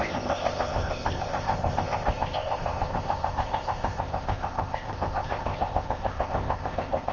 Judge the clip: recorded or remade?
remade